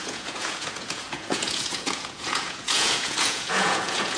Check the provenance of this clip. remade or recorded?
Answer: remade